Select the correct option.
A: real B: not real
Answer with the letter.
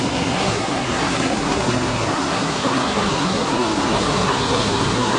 B